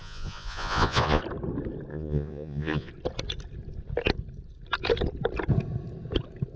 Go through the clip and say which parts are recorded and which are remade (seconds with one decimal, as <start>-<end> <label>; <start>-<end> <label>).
0.0-1.2 remade; 1.2-1.9 recorded; 1.9-2.9 remade; 2.9-6.6 recorded

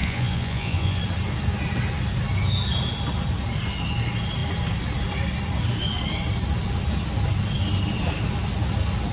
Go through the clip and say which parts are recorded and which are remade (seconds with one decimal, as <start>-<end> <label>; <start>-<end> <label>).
0.0-1.0 remade; 1.0-9.1 recorded

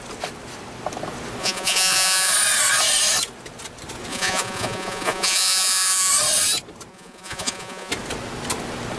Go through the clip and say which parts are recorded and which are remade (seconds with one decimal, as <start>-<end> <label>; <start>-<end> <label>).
0.0-1.4 recorded; 1.4-2.3 remade; 2.3-4.1 recorded; 4.1-6.1 remade; 6.1-6.9 recorded; 6.9-7.9 remade; 7.9-9.0 recorded

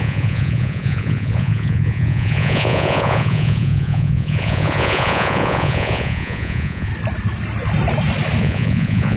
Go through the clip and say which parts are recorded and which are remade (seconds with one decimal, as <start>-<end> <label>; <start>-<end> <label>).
0.0-6.9 remade; 6.9-8.4 recorded; 8.4-9.2 remade

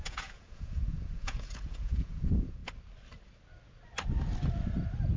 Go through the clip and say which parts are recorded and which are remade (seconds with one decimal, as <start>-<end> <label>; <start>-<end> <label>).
0.0-2.6 remade; 2.6-5.2 recorded

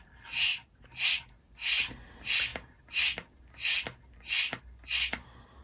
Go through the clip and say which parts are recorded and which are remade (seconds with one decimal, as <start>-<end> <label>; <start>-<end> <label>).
0.0-5.6 recorded